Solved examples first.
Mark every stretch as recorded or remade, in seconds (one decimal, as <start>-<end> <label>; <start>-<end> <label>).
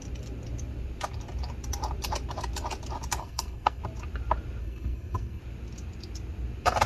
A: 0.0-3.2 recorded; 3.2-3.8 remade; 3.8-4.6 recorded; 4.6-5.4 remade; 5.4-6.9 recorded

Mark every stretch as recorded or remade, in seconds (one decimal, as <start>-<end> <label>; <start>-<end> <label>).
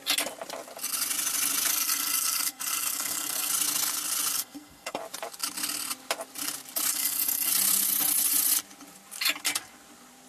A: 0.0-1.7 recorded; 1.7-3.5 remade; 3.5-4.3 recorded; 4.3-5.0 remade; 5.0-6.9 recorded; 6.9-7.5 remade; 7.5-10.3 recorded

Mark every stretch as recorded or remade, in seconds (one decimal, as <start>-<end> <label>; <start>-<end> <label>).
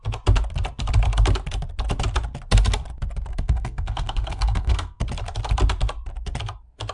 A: 0.0-3.3 recorded; 3.3-5.0 remade; 5.0-6.9 recorded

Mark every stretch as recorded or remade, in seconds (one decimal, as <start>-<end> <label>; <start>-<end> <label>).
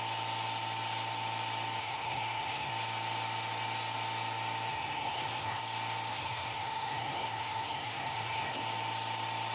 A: 0.0-1.8 recorded; 1.8-2.7 remade; 2.7-4.7 recorded; 4.7-5.6 remade; 5.6-6.1 recorded; 6.1-8.6 remade; 8.6-9.5 recorded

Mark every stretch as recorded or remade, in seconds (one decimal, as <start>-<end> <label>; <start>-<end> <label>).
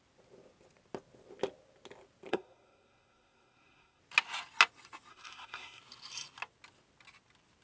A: 0.0-2.3 recorded; 2.3-4.0 remade; 4.0-5.1 recorded; 5.1-5.8 remade; 5.8-7.6 recorded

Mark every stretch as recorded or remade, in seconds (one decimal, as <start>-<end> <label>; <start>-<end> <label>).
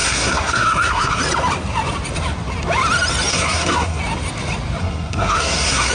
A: 0.0-1.2 remade; 1.2-3.3 recorded; 3.3-4.0 remade; 4.0-4.8 recorded; 4.8-5.9 remade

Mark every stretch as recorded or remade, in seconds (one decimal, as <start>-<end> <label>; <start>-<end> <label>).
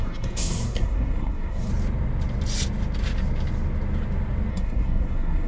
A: 0.0-1.7 remade; 1.7-4.5 recorded; 4.5-5.5 remade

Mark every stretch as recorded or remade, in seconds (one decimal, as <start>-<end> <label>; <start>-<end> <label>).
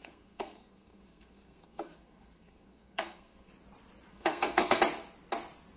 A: 0.0-3.5 remade; 3.5-4.1 recorded; 4.1-4.8 remade; 4.8-5.8 recorded